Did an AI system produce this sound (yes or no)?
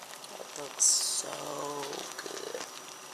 no